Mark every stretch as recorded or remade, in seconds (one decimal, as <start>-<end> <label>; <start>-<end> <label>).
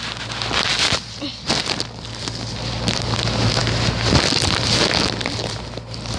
0.0-6.2 recorded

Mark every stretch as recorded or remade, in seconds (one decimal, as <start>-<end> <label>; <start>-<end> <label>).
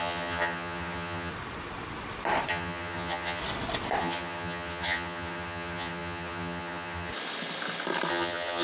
0.0-1.3 remade; 1.3-2.5 recorded; 2.5-3.4 remade; 3.4-4.0 recorded; 4.0-7.1 remade; 7.1-8.1 recorded; 8.1-8.6 remade